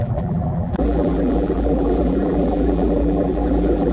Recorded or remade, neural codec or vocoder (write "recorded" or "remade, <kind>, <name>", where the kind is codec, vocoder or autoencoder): remade, vocoder, BigVGAN v2